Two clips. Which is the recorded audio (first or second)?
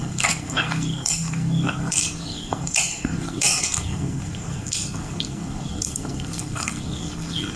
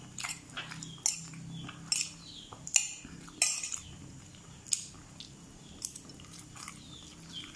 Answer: second